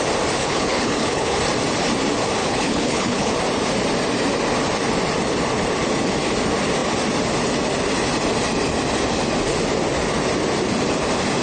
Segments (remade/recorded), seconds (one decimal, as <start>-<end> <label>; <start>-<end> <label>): 0.0-0.4 recorded; 0.4-1.4 remade; 1.4-2.4 recorded; 2.4-3.3 remade; 3.3-11.4 recorded